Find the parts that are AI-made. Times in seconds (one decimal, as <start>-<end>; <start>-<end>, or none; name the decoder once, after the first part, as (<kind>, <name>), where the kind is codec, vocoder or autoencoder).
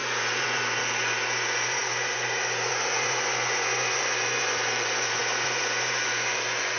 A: 0.0-6.8 (vocoder, Vocos)